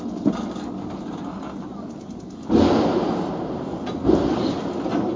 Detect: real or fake real